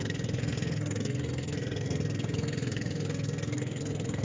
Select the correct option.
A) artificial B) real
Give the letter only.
A